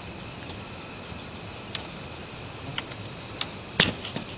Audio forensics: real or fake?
real